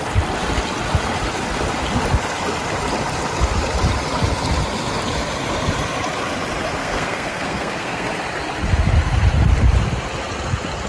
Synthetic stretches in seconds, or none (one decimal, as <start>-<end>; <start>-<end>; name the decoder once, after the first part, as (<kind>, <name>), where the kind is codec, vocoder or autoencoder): 6.8-8.1 (codec, SNAC)